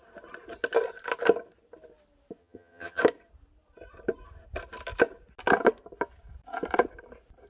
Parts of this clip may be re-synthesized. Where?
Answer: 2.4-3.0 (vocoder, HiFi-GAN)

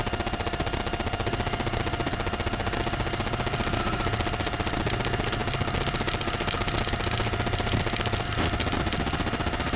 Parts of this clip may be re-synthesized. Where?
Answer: none

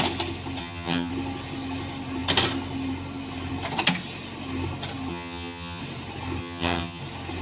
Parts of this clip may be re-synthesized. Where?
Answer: 0.6-1.1 (vocoder, HiFi-GAN); 5.1-5.8; 6.4-7.0

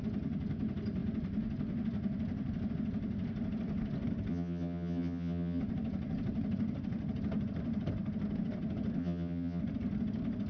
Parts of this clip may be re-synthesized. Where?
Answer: 4.3-5.6 (vocoder, HiFi-GAN); 9.0-9.6

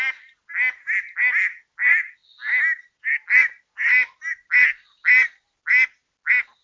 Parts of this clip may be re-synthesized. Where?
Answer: none

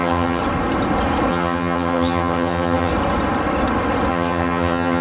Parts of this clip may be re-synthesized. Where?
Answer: 0.0-0.4 (vocoder, HiFi-GAN); 1.3-2.9; 4.1-5.0